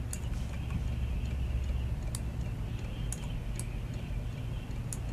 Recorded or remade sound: recorded